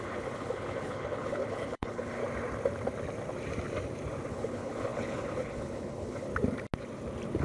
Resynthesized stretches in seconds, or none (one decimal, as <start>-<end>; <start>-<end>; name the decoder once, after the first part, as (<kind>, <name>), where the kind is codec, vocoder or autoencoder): 0.0-2.2 (codec, HILCodec); 4.3-6.3